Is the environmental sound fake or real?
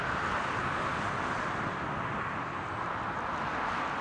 real